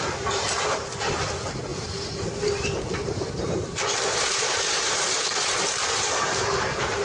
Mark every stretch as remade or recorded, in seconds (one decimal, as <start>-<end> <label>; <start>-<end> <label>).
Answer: 0.0-1.7 recorded; 1.7-2.5 remade; 2.5-4.1 recorded; 4.1-5.1 remade; 5.1-7.0 recorded